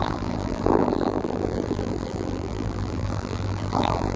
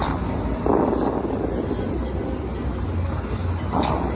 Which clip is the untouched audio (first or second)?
second